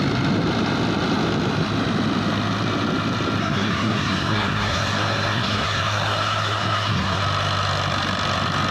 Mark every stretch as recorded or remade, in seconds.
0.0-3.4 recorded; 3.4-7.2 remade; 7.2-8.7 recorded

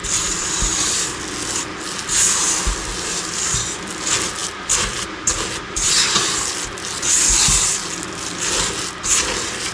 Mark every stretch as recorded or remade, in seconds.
0.0-9.7 recorded

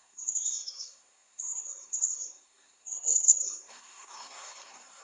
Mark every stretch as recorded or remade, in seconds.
0.0-5.0 remade